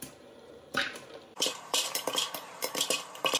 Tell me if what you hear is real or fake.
fake